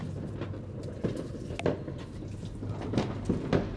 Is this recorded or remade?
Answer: recorded